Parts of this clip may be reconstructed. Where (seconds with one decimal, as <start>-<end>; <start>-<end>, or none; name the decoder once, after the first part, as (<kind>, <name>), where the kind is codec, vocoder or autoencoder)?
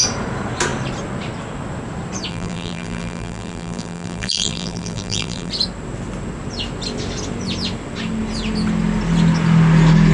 2.3-5.5 (vocoder, BigVGAN v2)